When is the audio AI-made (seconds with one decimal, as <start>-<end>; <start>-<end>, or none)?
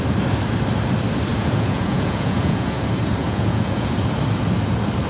1.3-2.8; 3.2-3.9